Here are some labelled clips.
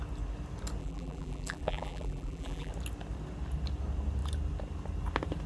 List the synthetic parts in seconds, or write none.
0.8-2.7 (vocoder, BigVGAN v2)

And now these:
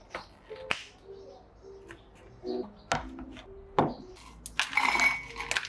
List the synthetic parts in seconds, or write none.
none

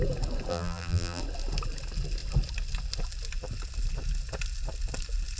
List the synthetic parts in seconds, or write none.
0.5-1.2 (vocoder, BigVGAN v2)

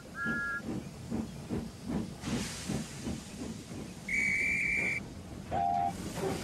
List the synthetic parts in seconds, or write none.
0.0-0.8 (vocoder, BigVGAN v2); 3.1-4.1; 5.0-6.4

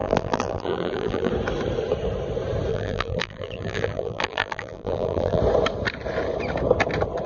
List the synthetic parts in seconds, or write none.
0.0-1.3 (vocoder, BigVGAN v2); 2.7-5.4

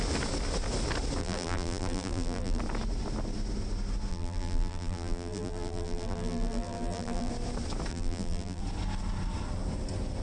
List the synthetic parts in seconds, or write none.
1.2-2.6 (vocoder, BigVGAN v2); 4.1-7.3; 7.9-8.6